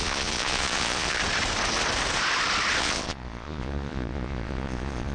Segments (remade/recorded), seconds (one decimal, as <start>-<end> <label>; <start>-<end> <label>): 0.0-1.2 remade; 1.2-2.8 recorded; 2.8-5.1 remade